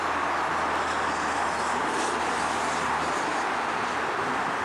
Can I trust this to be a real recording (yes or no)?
yes